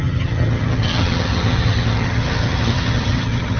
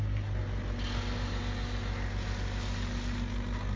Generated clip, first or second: first